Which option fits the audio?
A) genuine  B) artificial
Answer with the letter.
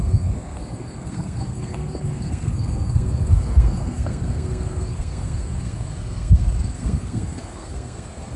B